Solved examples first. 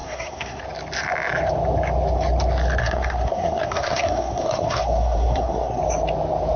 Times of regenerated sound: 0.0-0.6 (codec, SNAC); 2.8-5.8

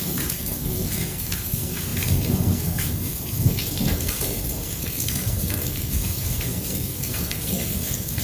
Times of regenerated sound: 0.0-8.2 (codec, SNAC)